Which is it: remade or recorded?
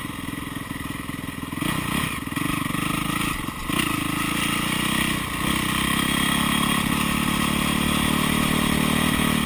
recorded